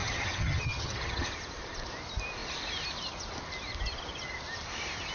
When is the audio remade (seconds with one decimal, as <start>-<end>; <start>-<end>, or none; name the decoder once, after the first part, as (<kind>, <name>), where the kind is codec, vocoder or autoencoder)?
0.0-1.3 (vocoder, HiFi-GAN)